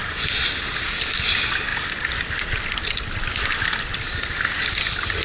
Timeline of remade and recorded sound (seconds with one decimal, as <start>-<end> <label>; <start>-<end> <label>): 0.0-5.2 recorded